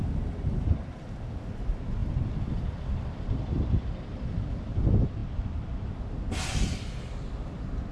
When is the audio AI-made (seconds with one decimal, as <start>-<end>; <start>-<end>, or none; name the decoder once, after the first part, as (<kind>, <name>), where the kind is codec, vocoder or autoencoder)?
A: none